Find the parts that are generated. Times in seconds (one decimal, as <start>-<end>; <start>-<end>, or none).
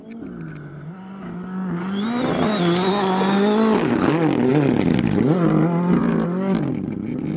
none